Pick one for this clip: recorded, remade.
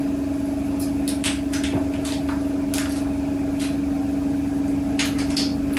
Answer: recorded